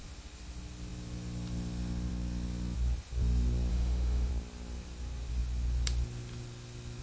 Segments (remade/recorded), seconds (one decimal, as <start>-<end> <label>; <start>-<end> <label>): 0.0-3.7 recorded; 3.7-4.3 remade; 4.3-7.0 recorded